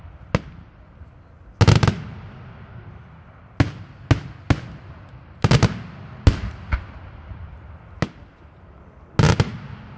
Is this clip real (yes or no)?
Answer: yes